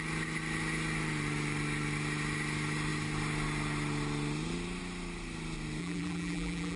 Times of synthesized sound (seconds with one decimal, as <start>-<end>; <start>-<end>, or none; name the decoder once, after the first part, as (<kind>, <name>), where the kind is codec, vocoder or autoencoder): 5.8-6.8 (vocoder, BigVGAN v2)